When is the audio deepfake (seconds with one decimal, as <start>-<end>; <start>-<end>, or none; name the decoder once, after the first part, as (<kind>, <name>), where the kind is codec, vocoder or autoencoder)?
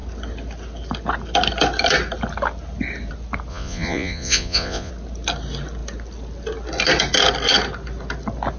3.5-4.9 (vocoder, Vocos)